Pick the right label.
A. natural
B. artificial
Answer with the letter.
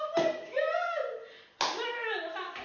A